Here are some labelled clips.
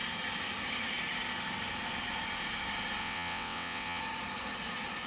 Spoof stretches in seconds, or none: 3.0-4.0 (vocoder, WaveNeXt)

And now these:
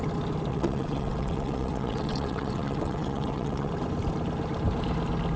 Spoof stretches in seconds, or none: 0.5-3.7 (vocoder, WaveNeXt)

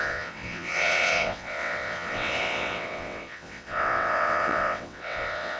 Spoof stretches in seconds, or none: 0.0-5.6 (vocoder, WaveNeXt)

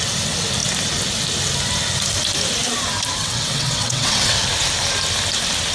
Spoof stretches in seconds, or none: 3.2-4.4 (vocoder, WaveNeXt)

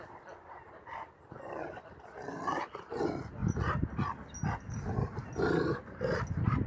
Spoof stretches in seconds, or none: none

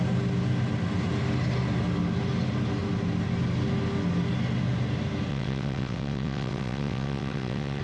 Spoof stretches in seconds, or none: 5.3-7.8 (vocoder, WaveNeXt)